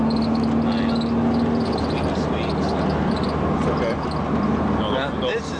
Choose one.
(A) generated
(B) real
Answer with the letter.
B